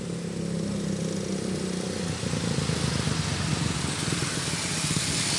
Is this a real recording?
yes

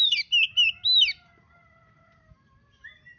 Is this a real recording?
yes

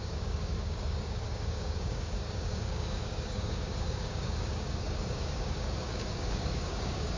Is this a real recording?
no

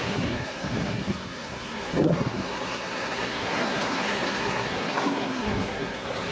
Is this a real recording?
no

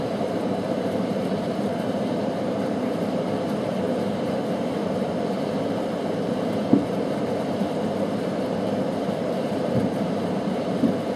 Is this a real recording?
no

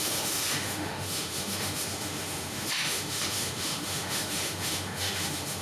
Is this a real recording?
no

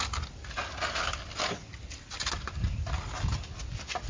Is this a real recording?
yes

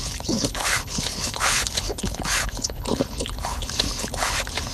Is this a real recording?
no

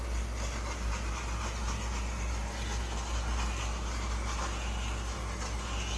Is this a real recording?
yes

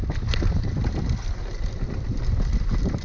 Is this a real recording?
yes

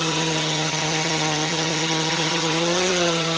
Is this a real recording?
no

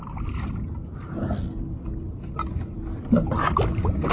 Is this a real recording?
yes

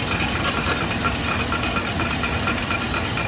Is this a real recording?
yes